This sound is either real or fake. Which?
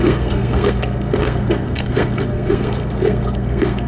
fake